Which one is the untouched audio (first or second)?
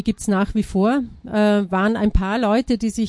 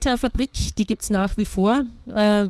first